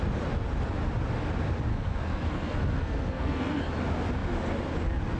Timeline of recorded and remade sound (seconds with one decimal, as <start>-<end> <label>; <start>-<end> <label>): 0.0-1.7 recorded; 1.7-3.6 remade; 3.6-5.2 recorded